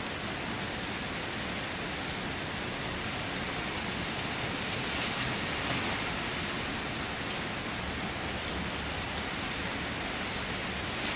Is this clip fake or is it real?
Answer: real